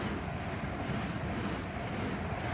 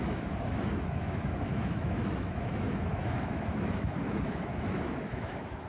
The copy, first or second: second